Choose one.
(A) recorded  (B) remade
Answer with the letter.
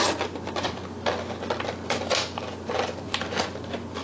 A